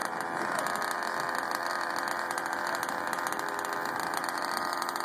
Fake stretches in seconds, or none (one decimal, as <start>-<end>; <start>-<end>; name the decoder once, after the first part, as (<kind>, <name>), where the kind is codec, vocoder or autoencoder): none